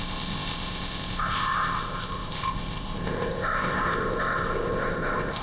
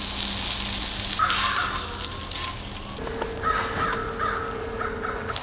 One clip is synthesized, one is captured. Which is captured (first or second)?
second